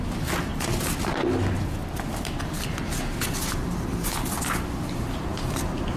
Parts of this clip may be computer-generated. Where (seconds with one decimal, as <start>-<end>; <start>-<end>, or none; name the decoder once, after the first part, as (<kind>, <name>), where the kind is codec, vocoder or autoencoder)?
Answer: none